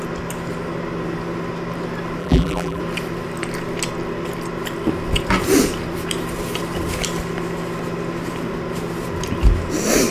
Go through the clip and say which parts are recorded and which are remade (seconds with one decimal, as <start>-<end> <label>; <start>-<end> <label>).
0.0-2.2 recorded; 2.2-2.8 remade; 2.8-10.1 recorded